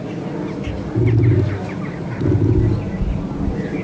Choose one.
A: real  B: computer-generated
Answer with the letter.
A